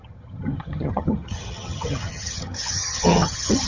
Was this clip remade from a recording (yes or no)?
yes